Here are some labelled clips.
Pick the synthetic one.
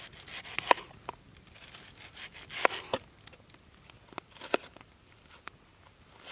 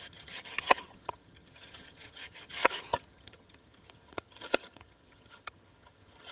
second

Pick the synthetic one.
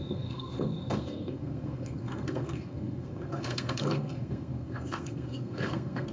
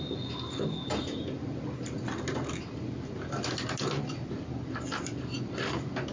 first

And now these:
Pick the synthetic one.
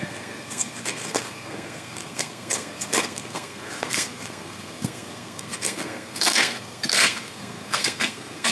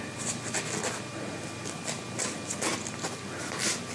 first